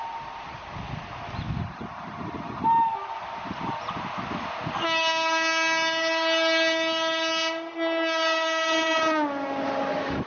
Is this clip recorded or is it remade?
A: recorded